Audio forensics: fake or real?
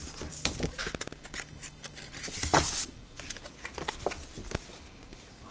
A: real